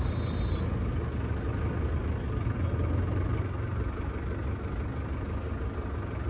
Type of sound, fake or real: real